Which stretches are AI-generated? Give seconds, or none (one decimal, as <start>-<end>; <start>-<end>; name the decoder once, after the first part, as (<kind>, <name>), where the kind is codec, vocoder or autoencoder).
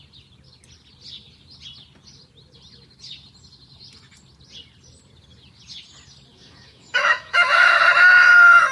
6.3-7.8 (autoencoder, DAC-VAE)